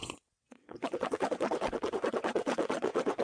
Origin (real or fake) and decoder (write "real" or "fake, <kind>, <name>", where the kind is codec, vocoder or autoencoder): fake, vocoder, WaveNeXt